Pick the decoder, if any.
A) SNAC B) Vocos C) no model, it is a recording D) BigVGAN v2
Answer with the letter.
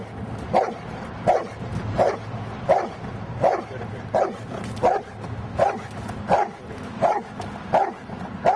C